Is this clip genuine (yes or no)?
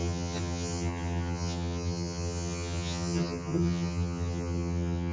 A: no